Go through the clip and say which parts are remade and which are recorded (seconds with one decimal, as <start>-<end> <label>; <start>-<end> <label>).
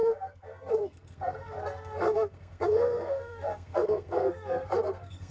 0.0-5.3 remade